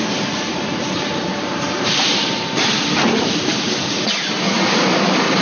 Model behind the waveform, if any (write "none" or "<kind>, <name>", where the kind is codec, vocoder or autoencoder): vocoder, BigVGAN v2